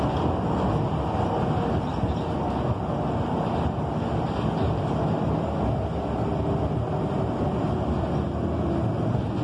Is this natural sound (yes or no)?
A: yes